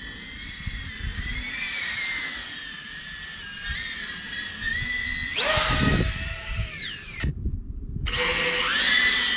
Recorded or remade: recorded